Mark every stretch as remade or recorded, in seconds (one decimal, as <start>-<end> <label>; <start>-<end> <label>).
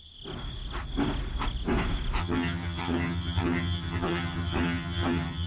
0.0-2.2 recorded; 2.2-5.5 remade